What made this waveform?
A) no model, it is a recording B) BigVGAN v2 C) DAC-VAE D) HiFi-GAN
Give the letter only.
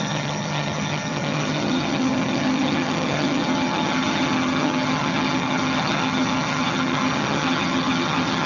D